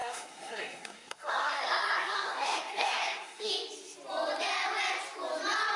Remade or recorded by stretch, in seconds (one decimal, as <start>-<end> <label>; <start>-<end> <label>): 0.0-3.5 remade; 3.5-5.8 recorded